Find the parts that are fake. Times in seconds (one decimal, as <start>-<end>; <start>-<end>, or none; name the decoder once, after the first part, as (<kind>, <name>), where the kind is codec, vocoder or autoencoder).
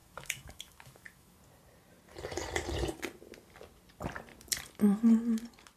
0.0-1.4 (autoencoder, DAC-VAE)